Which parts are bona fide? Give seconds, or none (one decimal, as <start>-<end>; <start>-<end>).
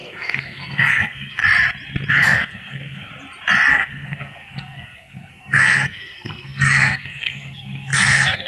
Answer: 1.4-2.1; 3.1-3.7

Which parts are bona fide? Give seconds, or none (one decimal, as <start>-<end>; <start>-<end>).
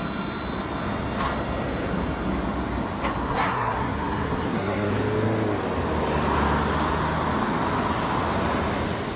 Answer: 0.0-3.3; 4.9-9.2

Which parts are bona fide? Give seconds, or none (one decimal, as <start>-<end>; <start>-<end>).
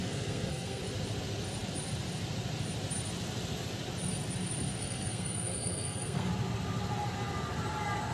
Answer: 0.8-4.8; 6.3-8.1